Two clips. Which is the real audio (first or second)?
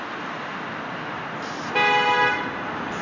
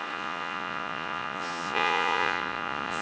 first